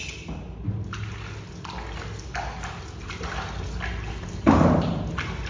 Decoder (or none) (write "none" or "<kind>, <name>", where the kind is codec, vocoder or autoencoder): none